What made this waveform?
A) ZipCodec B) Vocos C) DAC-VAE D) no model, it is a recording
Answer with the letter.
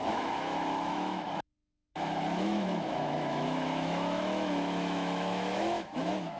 C